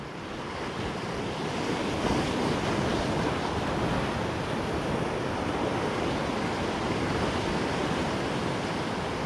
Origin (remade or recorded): recorded